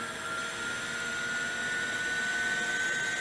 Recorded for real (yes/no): yes